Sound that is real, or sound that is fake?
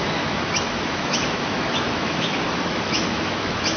fake